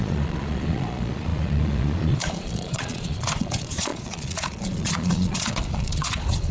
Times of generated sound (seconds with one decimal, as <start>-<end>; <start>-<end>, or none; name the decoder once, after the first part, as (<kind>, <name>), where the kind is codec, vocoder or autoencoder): 0.0-6.5 (vocoder, Vocos)